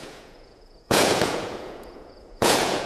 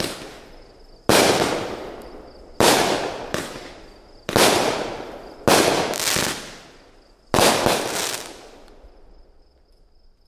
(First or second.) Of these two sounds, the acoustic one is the second